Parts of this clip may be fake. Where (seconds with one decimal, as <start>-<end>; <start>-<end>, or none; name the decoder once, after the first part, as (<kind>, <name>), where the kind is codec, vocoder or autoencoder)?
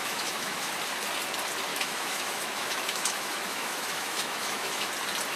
0.0-0.7 (autoencoder, DAC-VAE); 1.7-4.9